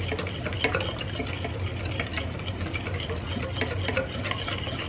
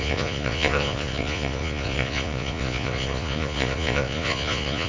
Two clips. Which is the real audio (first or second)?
first